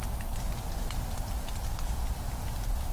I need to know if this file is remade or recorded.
recorded